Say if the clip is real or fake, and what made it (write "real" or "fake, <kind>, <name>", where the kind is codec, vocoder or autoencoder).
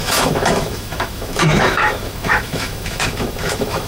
fake, autoencoder, DAC-VAE